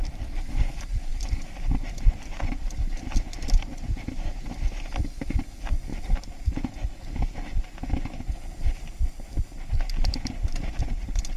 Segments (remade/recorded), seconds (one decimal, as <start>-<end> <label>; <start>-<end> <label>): 0.0-5.9 remade; 5.9-9.9 recorded; 9.9-11.4 remade